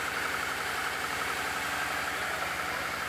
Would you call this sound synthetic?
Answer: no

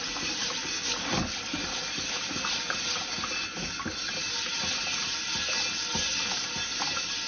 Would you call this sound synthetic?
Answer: no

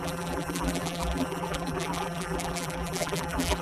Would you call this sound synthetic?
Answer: yes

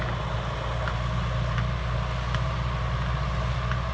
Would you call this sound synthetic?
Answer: no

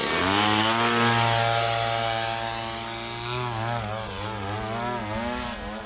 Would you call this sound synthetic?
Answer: no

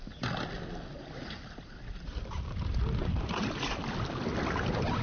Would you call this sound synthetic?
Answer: no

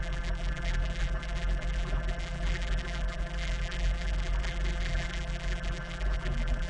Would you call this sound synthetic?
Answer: yes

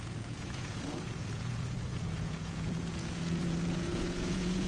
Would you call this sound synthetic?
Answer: yes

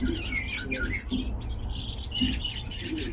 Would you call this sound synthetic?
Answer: no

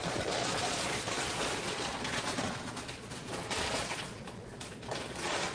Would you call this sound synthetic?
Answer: yes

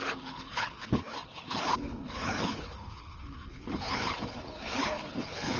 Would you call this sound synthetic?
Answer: yes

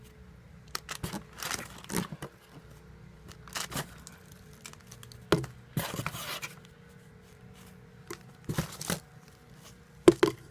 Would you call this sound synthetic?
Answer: no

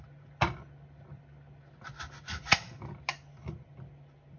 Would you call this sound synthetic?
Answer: no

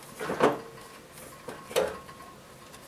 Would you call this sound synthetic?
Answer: no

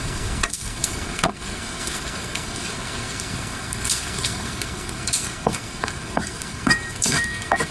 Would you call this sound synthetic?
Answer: yes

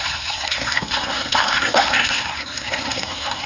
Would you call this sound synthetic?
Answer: yes